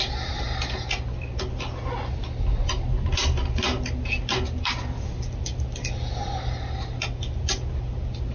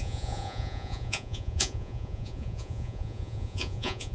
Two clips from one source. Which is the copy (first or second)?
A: second